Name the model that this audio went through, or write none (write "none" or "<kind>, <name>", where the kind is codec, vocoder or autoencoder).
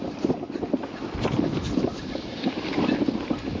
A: none